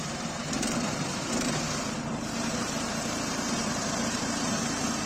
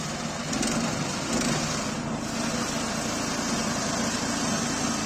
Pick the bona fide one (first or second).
second